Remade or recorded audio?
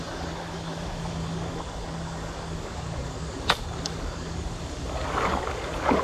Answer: remade